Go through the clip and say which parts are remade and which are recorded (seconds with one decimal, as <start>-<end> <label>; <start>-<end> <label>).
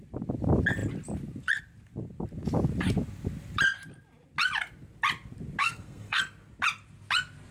0.0-5.6 recorded; 5.6-6.2 remade; 6.2-7.5 recorded